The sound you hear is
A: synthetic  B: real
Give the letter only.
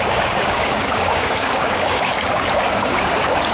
A